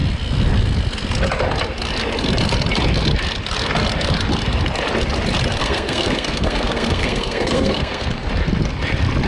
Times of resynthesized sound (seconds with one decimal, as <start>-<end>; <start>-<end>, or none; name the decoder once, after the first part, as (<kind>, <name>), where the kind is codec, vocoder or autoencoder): 5.6-8.3 (codec, SNAC)